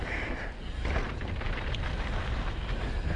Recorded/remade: recorded